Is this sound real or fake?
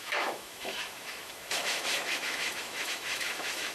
fake